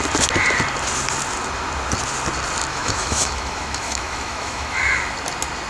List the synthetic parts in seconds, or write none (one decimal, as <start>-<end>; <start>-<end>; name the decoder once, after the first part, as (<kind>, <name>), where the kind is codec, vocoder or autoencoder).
2.7-4.8 (autoencoder, DAC-VAE)